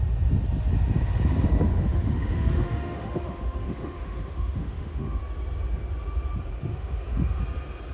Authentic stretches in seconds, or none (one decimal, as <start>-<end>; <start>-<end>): 0.0-1.7; 5.2-6.7; 7.4-7.9